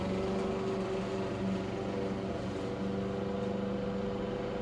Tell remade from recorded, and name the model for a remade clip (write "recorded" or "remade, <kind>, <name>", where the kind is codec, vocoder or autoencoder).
recorded